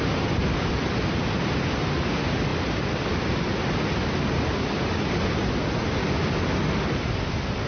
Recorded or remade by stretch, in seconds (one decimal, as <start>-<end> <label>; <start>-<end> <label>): 0.0-7.7 recorded